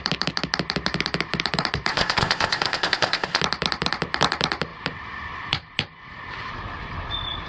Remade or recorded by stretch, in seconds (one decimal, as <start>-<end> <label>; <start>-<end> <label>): 0.0-1.9 recorded; 1.9-3.4 remade; 3.4-7.5 recorded